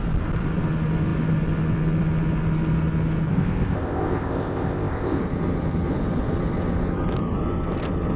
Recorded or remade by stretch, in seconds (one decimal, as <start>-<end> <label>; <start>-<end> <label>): 0.0-3.3 recorded; 3.3-5.2 remade; 5.2-8.2 recorded